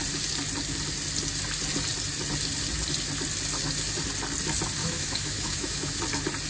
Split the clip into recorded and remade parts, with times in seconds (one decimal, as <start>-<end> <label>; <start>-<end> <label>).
0.0-4.8 recorded; 4.8-6.0 remade; 6.0-6.5 recorded